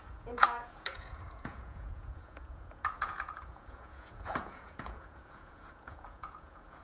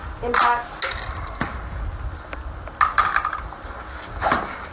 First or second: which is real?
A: second